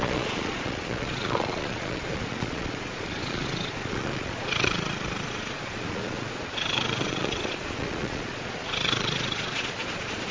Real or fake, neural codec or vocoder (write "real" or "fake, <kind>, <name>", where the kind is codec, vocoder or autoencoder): fake, vocoder, Vocos